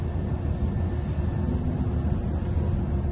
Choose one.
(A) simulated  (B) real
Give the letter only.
B